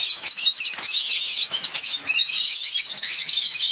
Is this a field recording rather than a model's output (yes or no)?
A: no